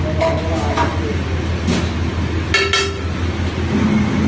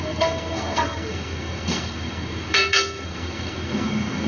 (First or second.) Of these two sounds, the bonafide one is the first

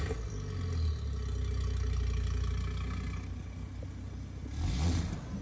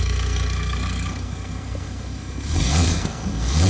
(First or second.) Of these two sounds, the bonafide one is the first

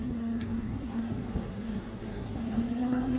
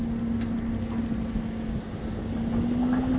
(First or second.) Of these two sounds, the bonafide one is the second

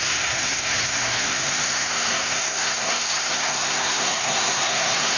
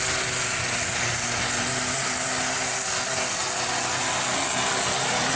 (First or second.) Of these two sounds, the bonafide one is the second